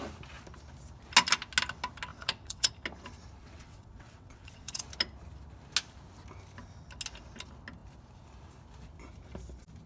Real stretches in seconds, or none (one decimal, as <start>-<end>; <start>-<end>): 0.0-2.1; 2.7-3.4; 4.8-9.9